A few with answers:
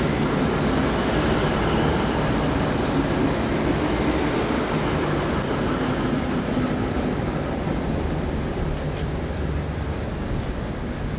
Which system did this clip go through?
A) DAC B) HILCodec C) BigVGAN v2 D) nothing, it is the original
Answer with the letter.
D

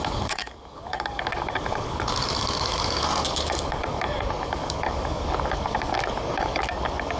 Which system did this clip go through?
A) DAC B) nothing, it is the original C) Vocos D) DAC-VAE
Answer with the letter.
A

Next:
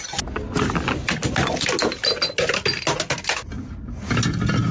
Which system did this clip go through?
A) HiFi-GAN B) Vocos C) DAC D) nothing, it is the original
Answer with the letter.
D